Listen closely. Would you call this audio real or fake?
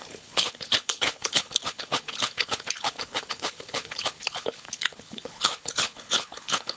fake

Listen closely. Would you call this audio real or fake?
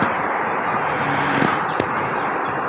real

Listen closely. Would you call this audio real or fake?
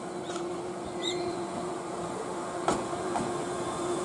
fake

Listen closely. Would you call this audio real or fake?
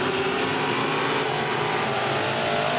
real